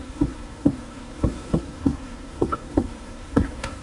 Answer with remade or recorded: remade